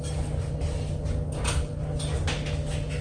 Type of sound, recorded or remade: recorded